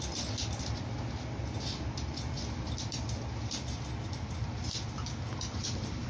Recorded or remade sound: recorded